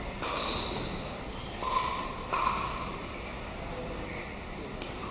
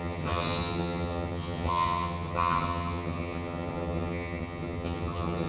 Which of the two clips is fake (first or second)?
second